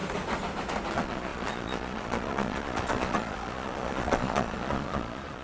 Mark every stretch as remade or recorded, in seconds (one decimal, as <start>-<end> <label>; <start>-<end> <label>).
0.0-0.9 recorded; 0.9-5.4 remade